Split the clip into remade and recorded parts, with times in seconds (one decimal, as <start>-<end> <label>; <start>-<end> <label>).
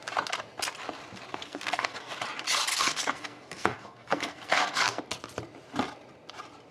0.0-1.3 recorded; 1.3-2.1 remade; 2.1-2.7 recorded; 2.7-5.0 remade; 5.0-6.7 recorded